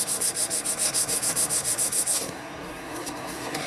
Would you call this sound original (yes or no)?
no